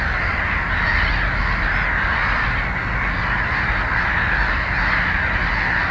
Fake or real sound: real